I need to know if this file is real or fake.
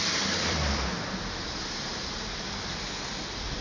fake